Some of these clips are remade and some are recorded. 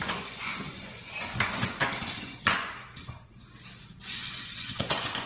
remade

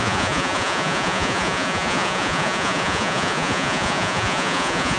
remade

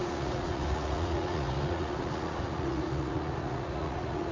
remade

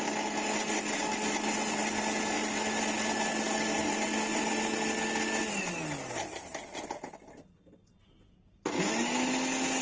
recorded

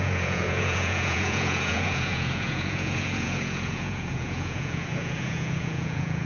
remade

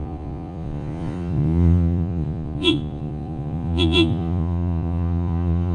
remade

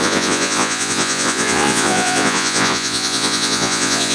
remade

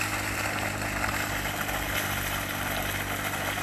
recorded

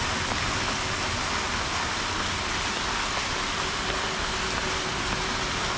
recorded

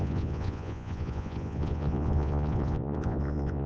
remade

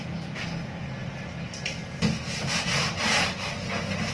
recorded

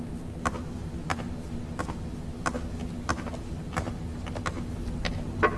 recorded